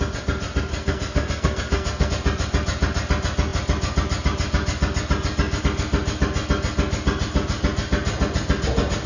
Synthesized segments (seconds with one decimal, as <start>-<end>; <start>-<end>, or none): 0.7-2.1